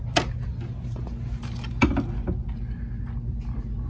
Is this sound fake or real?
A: real